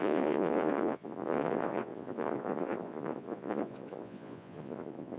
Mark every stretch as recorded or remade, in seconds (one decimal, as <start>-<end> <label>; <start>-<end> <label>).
0.0-5.2 remade